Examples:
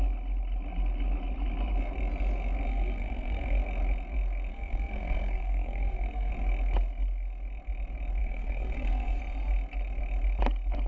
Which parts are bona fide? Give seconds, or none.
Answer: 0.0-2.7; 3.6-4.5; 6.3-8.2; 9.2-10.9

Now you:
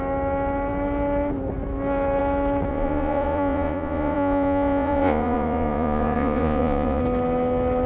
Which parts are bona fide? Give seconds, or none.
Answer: 0.0-2.7; 7.0-7.9

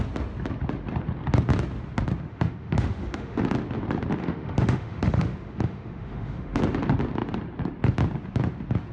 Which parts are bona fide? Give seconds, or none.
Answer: 0.0-2.3; 3.4-4.2; 6.6-8.9

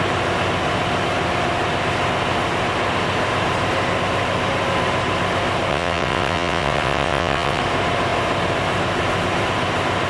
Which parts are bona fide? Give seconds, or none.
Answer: 0.0-5.7; 7.6-10.1

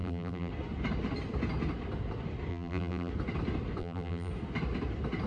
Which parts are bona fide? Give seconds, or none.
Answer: 0.5-2.5; 3.1-3.8; 4.3-5.3

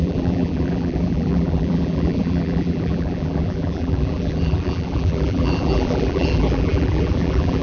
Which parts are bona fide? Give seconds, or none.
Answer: none